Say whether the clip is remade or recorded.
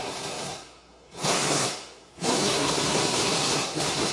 remade